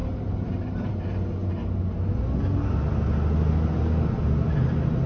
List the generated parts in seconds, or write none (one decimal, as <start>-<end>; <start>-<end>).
0.0-0.9